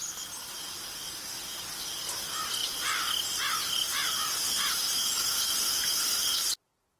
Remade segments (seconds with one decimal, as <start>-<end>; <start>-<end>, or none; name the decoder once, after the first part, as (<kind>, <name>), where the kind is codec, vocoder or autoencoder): none